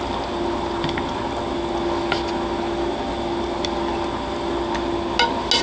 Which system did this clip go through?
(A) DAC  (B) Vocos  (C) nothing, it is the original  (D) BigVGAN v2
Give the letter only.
C